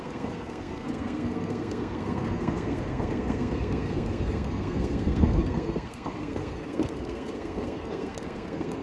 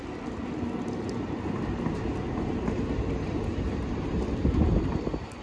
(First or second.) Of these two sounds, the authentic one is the second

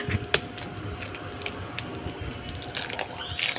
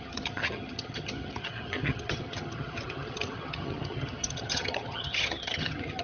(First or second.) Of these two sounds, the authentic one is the first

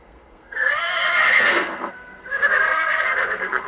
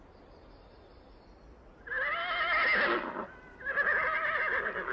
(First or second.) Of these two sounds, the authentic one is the second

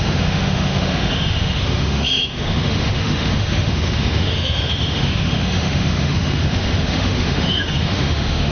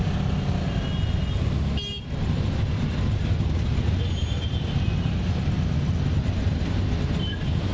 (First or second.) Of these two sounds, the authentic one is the second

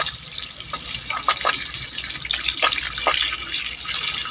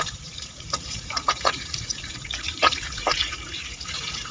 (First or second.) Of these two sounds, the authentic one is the first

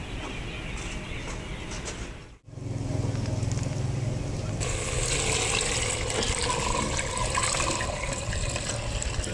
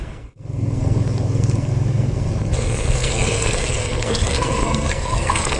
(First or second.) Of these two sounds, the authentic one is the first